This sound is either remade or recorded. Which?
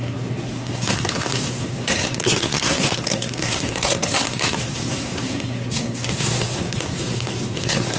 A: remade